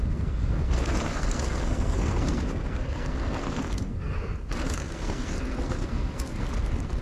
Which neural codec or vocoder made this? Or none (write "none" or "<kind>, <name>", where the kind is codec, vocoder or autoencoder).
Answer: codec, SNAC